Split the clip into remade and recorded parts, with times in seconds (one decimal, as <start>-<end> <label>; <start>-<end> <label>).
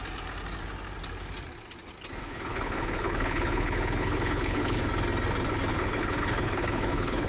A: 0.0-2.2 recorded; 2.2-4.8 remade; 4.8-5.7 recorded; 5.7-7.3 remade